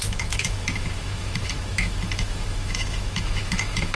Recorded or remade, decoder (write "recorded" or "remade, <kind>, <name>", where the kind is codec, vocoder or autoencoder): remade, autoencoder, DAC-VAE